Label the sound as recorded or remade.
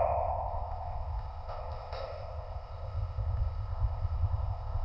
remade